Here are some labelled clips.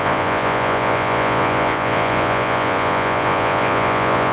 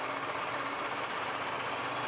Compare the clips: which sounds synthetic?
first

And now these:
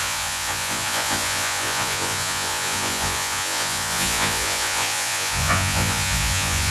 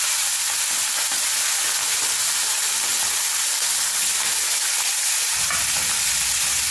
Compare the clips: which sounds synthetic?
first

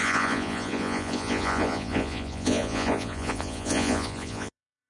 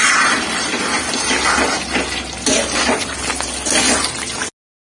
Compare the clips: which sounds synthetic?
first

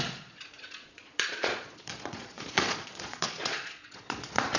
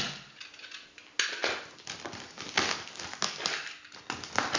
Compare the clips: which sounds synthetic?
first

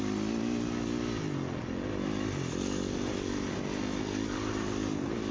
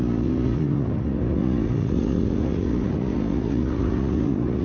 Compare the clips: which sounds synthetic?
second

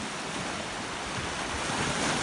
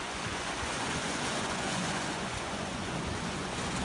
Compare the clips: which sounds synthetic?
second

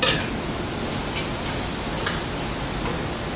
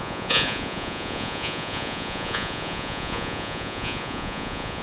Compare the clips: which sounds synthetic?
second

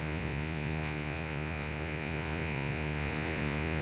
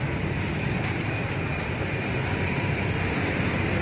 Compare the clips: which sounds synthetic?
first